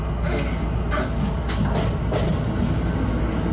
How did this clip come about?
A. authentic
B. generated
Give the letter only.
A